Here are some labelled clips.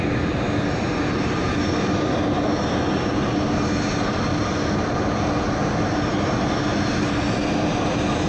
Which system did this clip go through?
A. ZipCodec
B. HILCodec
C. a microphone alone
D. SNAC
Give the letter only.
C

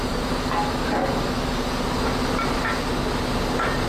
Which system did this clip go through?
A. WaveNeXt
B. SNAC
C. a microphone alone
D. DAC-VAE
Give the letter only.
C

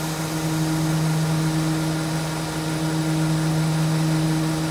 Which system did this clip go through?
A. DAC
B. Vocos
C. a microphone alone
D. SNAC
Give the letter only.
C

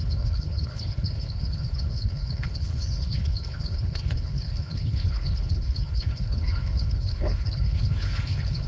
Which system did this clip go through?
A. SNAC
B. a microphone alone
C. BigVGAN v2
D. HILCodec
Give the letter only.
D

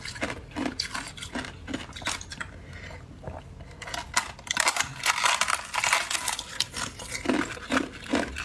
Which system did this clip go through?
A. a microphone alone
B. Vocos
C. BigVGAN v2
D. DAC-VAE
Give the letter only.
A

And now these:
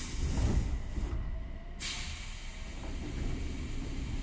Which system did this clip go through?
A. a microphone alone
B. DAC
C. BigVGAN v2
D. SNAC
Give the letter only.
A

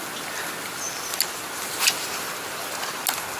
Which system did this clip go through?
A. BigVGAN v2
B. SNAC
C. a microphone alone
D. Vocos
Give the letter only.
C